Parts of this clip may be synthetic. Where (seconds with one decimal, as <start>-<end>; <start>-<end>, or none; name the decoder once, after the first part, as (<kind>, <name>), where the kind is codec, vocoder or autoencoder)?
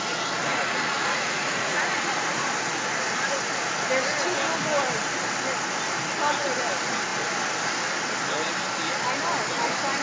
0.4-2.1 (vocoder, Vocos)